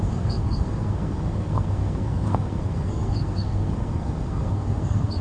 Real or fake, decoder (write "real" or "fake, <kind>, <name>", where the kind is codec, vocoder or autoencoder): fake, codec, SNAC